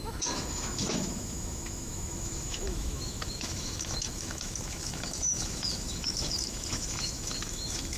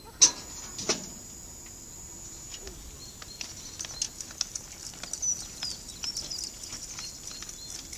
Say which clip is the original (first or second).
second